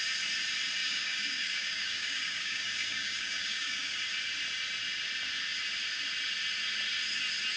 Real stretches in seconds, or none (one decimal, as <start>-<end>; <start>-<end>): 0.0-0.8; 4.0-7.6